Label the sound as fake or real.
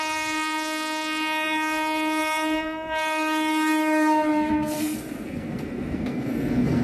fake